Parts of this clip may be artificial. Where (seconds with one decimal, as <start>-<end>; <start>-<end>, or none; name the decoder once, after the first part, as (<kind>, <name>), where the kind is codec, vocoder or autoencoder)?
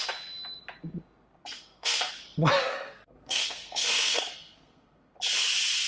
1.4-2.1 (codec, SNAC); 2.6-5.1